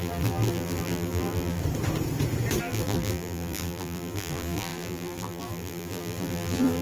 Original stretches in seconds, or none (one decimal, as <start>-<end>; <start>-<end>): 1.6-2.6